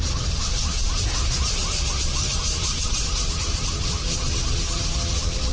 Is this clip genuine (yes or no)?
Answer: no